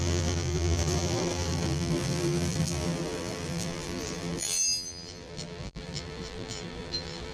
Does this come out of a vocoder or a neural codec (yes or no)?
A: yes